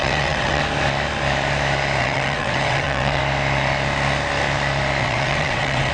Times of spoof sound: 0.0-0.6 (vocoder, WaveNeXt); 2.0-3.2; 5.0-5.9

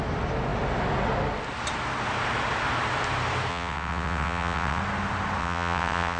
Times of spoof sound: 3.5-4.8 (vocoder, WaveNeXt); 5.4-6.2

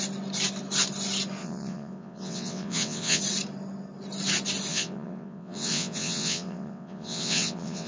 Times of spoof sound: 1.4-3.2 (vocoder, WaveNeXt); 4.7-7.9